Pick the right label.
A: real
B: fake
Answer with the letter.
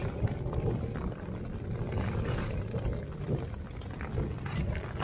A